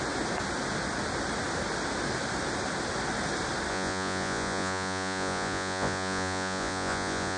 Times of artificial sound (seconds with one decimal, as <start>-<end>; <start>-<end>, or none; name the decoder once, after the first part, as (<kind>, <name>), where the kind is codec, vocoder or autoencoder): 3.7-7.4 (vocoder, Vocos)